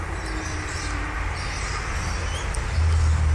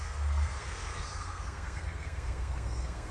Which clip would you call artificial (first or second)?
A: second